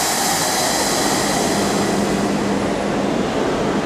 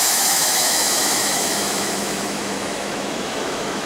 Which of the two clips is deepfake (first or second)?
second